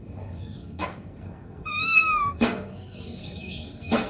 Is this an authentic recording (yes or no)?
no